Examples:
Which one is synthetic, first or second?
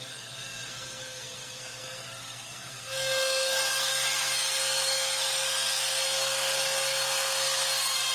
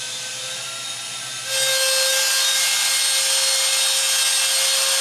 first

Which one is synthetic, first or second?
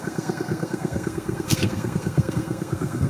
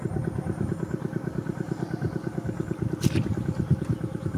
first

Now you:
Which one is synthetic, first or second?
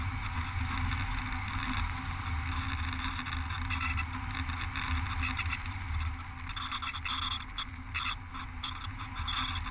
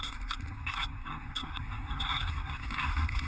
second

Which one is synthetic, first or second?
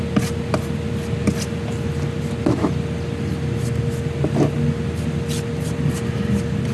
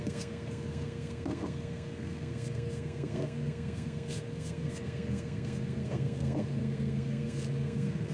second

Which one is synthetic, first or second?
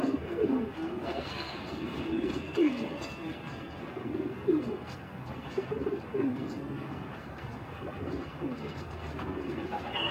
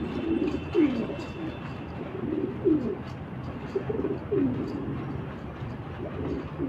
first